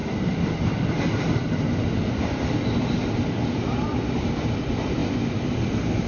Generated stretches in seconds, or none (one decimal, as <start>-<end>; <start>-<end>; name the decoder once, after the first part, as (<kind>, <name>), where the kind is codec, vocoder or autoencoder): 5.0-6.1 (vocoder, BigVGAN v2)